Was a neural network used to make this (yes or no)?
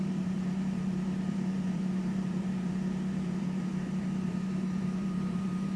yes